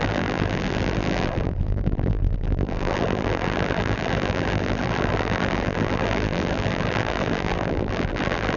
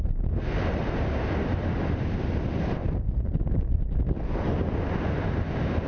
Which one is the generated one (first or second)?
first